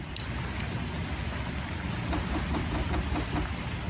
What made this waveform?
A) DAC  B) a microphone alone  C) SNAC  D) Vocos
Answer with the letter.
B